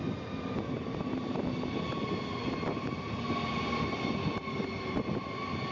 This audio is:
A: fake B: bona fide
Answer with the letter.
B